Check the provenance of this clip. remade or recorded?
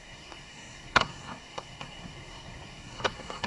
remade